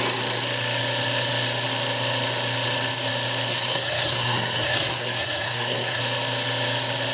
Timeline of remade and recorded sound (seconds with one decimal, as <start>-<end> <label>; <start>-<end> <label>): 0.0-3.5 recorded; 3.5-6.0 remade; 6.0-7.1 recorded